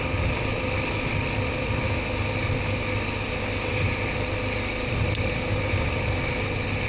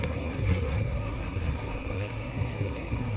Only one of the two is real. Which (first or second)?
first